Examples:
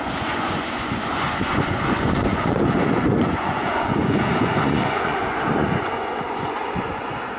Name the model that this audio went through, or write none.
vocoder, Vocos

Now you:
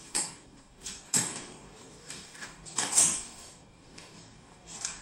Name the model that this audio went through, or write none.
codec, DAC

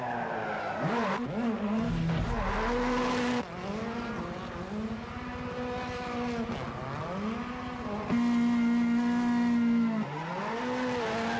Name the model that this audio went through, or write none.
none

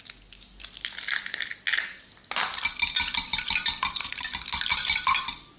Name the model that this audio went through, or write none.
none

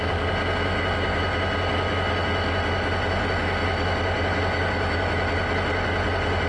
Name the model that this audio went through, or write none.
none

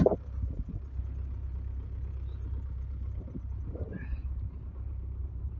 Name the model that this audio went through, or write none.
vocoder, BigVGAN v2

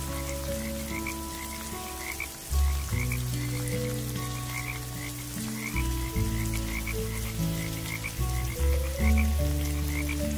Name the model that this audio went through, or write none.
none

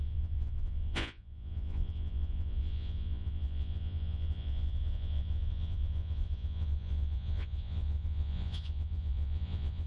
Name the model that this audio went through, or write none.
vocoder, Vocos